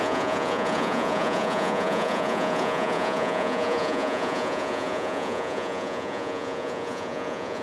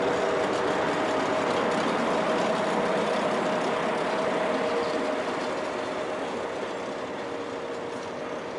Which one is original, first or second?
second